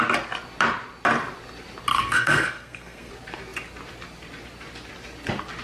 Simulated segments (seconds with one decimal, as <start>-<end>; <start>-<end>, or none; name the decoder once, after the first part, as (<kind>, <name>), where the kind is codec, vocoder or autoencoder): 1.9-3.1 (codec, SNAC)